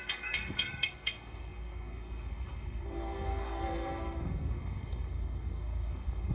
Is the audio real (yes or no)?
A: no